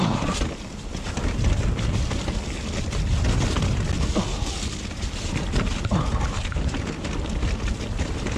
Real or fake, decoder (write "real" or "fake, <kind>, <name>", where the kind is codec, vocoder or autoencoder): real